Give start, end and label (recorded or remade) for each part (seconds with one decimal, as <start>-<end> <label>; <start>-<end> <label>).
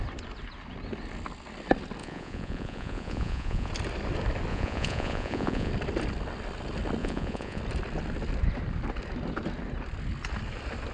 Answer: 0.0-2.0 recorded; 2.0-3.7 remade; 3.7-4.5 recorded; 4.5-5.7 remade; 5.7-7.0 recorded; 7.0-7.6 remade; 7.6-10.9 recorded